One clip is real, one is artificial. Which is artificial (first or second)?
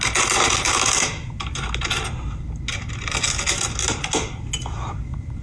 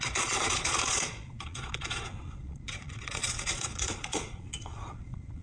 second